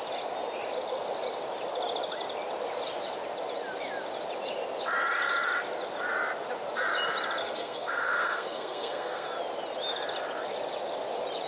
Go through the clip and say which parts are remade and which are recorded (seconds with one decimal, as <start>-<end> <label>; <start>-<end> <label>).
0.0-7.4 recorded; 7.4-9.3 remade; 9.3-11.5 recorded